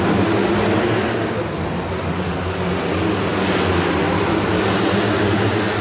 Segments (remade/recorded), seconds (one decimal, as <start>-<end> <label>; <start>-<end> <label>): 0.0-5.8 recorded